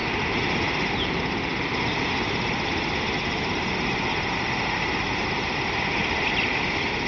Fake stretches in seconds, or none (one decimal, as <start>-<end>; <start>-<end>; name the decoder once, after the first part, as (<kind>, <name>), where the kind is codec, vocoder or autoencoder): 0.0-1.1 (vocoder, BigVGAN v2); 6.0-6.6